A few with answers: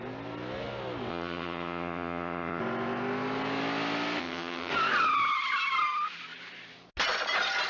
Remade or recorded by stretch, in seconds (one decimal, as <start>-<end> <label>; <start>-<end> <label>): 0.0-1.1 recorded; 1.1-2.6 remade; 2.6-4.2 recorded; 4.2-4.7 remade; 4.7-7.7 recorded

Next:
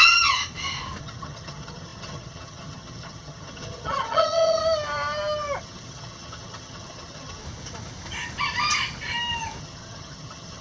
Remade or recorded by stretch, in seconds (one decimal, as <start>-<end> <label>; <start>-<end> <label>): 0.0-0.4 remade; 0.4-1.0 recorded; 1.0-4.6 remade; 4.6-5.6 recorded; 5.6-7.4 remade; 7.4-9.6 recorded; 9.6-10.6 remade

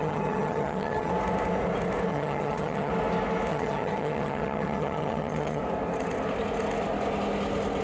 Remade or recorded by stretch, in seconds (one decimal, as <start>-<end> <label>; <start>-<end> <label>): 0.0-1.1 remade; 1.1-2.1 recorded; 2.1-2.9 remade; 2.9-3.5 recorded; 3.5-5.6 remade; 5.6-7.8 recorded

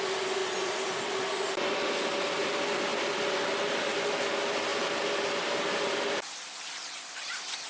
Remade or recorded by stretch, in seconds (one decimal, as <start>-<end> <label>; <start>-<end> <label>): 0.0-7.7 recorded

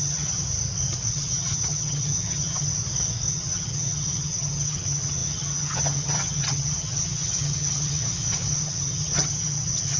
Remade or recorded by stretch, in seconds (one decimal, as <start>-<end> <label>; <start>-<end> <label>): 0.0-0.4 remade; 0.4-1.1 recorded; 1.1-2.7 remade; 2.7-3.3 recorded; 3.3-10.0 remade